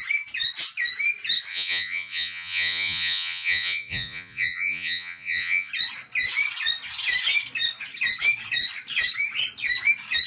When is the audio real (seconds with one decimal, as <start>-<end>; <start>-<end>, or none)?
0.0-1.5; 5.7-10.3